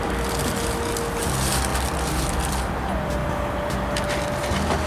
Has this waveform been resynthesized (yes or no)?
no